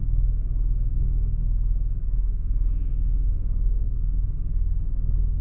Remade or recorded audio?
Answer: remade